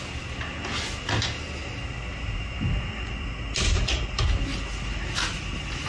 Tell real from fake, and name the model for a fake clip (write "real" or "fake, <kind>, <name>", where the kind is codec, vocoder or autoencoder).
real